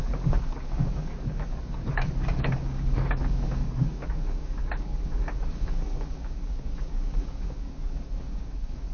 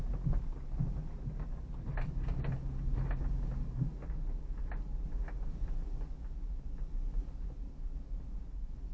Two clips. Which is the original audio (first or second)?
second